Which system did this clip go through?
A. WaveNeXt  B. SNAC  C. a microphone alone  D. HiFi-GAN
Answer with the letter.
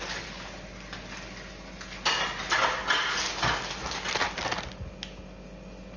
C